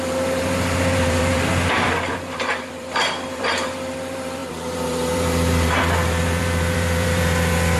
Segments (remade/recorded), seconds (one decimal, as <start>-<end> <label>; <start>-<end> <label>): 0.0-7.8 remade